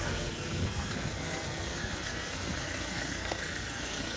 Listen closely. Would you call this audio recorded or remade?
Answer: remade